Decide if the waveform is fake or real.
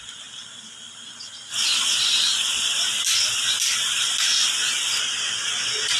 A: real